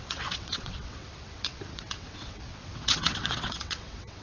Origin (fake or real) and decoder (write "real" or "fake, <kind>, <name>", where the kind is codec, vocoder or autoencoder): fake, vocoder, WaveNeXt